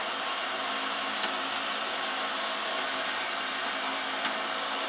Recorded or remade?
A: recorded